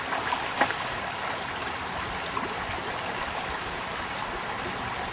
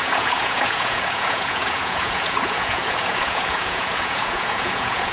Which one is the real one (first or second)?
first